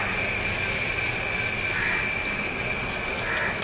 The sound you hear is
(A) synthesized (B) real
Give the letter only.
B